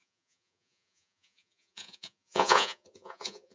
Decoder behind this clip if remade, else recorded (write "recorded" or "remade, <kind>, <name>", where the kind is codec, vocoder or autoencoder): remade, vocoder, Vocos